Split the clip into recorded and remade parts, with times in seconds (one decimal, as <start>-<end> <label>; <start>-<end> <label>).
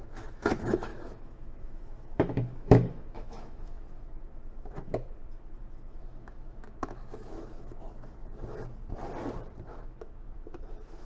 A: 0.0-8.2 remade; 8.2-9.7 recorded; 9.7-11.0 remade